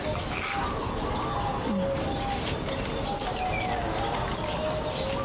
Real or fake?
real